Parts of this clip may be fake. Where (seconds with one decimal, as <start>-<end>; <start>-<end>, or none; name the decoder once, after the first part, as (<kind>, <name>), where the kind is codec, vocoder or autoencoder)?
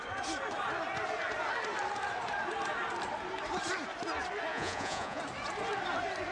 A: 4.5-5.2 (vocoder, Vocos)